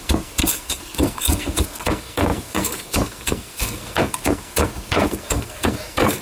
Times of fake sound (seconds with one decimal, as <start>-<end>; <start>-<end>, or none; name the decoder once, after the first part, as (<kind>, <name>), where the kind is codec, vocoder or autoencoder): 0.0-6.2 (codec, SNAC)

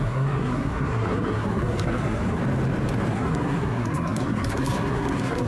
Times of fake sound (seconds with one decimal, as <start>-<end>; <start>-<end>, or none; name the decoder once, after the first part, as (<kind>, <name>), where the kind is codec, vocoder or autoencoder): 0.0-2.4 (codec, SNAC); 3.1-5.5